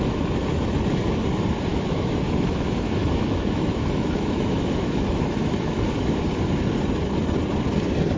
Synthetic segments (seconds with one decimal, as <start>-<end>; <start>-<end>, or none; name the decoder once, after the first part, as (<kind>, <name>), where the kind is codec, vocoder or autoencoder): 1.7-6.2 (autoencoder, DAC-VAE)